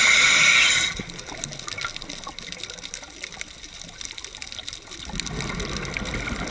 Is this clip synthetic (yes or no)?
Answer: no